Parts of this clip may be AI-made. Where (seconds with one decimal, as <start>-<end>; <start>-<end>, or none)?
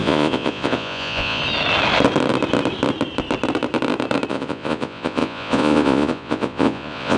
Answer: 0.0-1.4; 4.3-7.2